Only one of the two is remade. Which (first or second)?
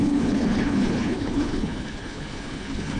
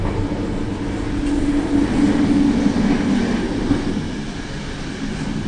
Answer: first